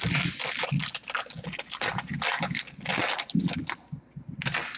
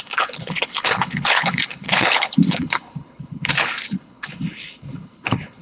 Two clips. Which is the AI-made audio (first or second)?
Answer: second